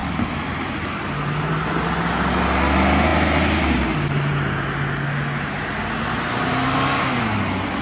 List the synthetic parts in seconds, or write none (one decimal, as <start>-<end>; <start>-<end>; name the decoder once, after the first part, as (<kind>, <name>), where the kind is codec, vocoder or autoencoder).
none